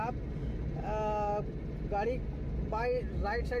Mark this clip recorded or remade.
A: recorded